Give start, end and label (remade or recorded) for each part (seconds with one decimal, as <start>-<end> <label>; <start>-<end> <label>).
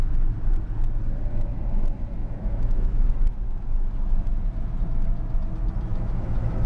0.0-2.2 recorded; 2.2-3.1 remade; 3.1-5.9 recorded; 5.9-6.7 remade